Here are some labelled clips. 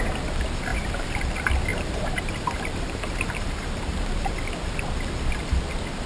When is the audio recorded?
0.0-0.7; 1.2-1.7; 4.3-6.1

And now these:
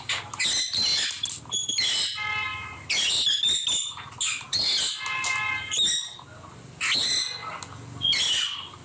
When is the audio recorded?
0.0-8.8

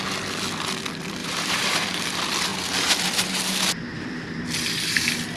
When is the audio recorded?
0.0-1.2; 2.0-5.4

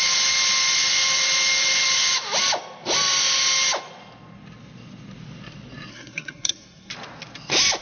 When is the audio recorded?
0.0-5.9; 6.9-7.8

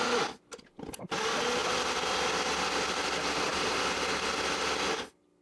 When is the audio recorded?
0.0-5.4

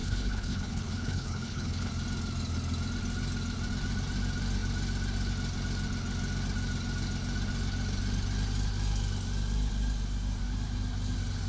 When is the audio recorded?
1.9-11.5

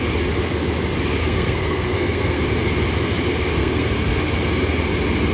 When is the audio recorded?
0.0-1.2; 2.4-3.6; 4.2-5.3